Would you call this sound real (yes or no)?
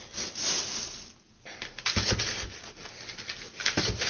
yes